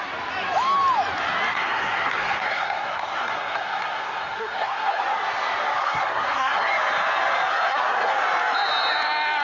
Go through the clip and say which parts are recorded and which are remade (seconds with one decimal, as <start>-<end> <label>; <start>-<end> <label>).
0.0-1.5 recorded; 1.5-5.0 remade; 5.0-5.8 recorded; 5.8-6.7 remade; 6.7-7.5 recorded; 7.5-8.1 remade; 8.1-9.4 recorded